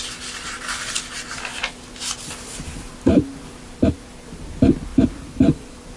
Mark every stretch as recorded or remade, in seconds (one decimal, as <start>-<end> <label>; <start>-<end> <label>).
0.0-4.9 recorded; 4.9-6.0 remade